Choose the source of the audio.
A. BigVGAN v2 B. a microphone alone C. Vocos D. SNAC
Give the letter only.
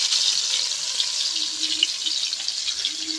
B